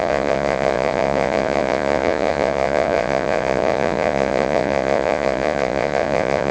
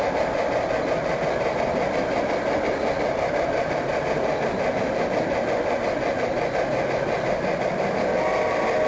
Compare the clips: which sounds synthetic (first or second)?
first